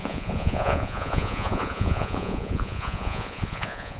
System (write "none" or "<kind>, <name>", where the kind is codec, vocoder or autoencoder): vocoder, Vocos